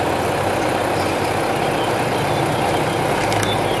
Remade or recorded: recorded